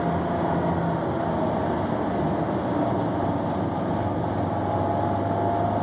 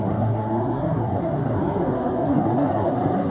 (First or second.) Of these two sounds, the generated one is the second